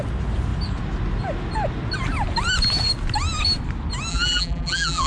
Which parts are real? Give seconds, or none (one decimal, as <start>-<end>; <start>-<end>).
0.0-4.1